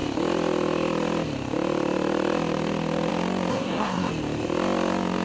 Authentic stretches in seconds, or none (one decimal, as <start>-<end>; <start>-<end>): 0.0-3.5; 4.1-5.2